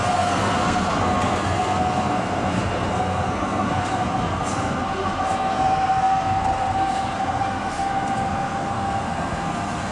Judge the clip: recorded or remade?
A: remade